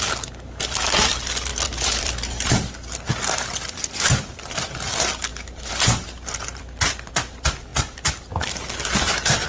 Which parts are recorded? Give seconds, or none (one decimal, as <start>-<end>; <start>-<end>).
0.0-1.5; 2.5-5.3; 7.1-9.5